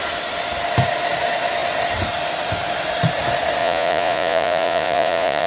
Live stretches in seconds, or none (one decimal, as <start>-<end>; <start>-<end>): 0.0-3.6